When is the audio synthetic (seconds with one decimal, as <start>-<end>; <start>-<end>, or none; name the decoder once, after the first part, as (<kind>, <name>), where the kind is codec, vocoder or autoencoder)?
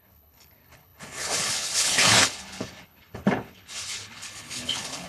0.0-5.1 (codec, HILCodec)